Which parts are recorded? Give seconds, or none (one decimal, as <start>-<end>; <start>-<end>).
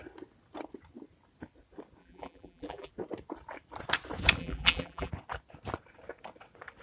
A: 0.0-2.0; 2.9-4.4; 5.1-6.8